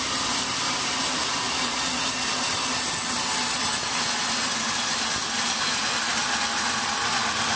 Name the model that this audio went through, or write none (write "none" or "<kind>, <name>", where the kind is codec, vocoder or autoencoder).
none